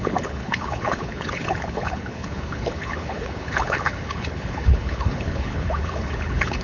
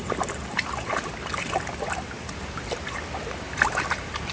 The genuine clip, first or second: second